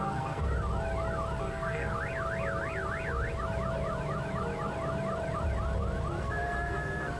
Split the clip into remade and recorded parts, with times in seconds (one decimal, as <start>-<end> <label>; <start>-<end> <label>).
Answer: 0.0-0.5 remade; 0.5-1.4 recorded; 1.4-1.9 remade; 1.9-6.2 recorded; 6.2-7.2 remade